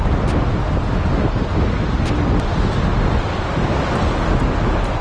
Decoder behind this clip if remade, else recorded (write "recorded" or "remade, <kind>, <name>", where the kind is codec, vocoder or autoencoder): recorded